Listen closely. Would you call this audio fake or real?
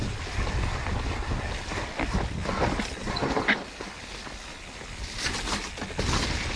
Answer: real